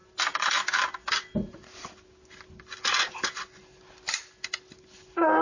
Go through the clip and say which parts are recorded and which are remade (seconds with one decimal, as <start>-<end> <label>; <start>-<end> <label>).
0.0-5.4 recorded